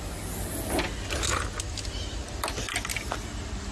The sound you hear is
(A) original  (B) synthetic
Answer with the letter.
A